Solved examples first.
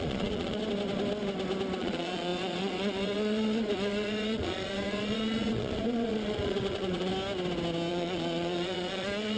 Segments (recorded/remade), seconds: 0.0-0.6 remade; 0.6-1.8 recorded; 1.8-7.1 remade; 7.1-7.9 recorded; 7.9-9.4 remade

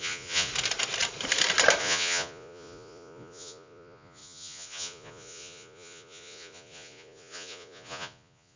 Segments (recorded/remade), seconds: 0.0-0.5 remade; 0.5-1.8 recorded; 1.8-8.6 remade

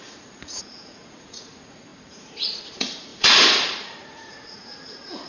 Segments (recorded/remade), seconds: 0.0-5.3 remade

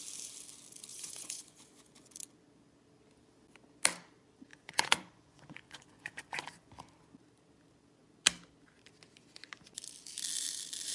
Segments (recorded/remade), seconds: 0.0-0.9 recorded; 0.9-2.1 remade; 2.1-4.5 recorded; 4.5-6.7 remade; 6.7-10.9 recorded

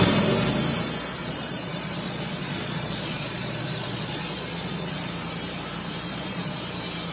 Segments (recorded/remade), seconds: 0.0-1.2 recorded; 1.2-5.1 remade; 5.1-6.1 recorded; 6.1-6.6 remade; 6.6-7.1 recorded

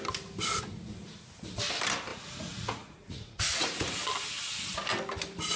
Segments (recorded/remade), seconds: 0.0-2.1 recorded; 2.1-4.0 remade; 4.0-5.6 recorded

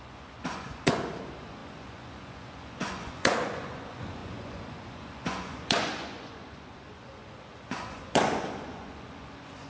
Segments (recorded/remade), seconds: 0.0-9.7 remade

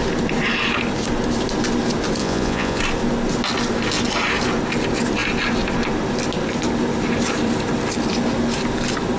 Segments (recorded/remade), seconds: 0.0-2.2 recorded; 2.2-2.8 remade; 2.8-9.2 recorded